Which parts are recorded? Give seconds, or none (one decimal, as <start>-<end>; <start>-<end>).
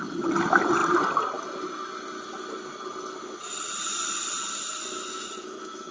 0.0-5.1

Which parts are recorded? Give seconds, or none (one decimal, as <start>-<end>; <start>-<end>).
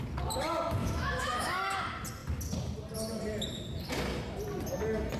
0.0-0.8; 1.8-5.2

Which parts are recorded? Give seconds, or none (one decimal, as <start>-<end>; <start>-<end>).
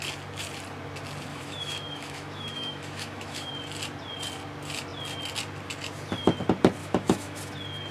0.0-1.3; 3.5-6.8; 7.4-7.9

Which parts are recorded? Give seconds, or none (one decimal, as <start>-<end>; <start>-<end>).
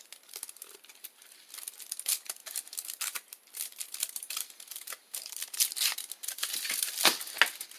0.0-7.8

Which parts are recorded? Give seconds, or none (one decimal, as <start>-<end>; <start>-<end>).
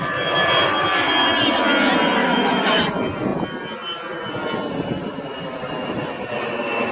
0.0-2.2; 2.8-6.9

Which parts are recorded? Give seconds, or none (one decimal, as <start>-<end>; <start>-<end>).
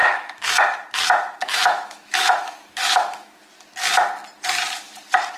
0.6-1.4; 3.4-5.4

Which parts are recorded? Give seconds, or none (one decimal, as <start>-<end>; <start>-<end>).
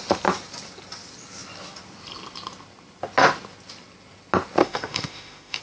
0.0-4.6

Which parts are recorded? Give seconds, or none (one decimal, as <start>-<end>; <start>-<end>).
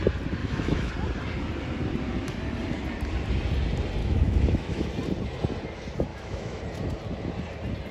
0.0-0.4; 0.9-4.0; 4.9-6.1; 6.6-7.9